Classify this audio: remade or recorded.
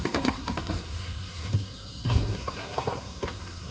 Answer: remade